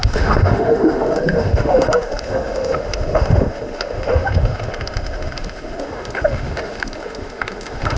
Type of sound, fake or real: fake